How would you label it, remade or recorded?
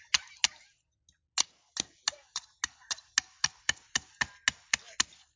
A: recorded